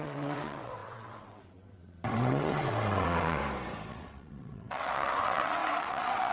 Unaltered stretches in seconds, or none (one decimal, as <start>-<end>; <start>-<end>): 3.4-3.9